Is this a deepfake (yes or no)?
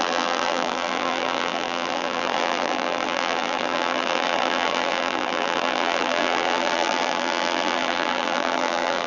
yes